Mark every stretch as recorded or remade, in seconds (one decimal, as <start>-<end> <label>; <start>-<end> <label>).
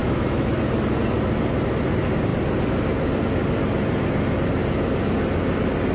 0.0-0.6 remade; 0.6-5.9 recorded